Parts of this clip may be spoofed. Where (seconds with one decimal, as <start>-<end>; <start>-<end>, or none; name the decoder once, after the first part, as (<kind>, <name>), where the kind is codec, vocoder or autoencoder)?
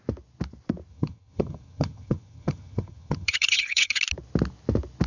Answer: 0.9-4.0 (vocoder, HiFi-GAN)